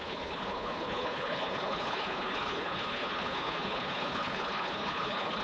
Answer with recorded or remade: remade